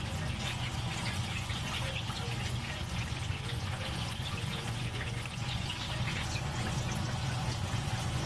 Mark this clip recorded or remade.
remade